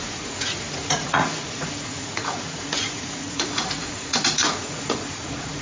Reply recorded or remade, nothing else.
remade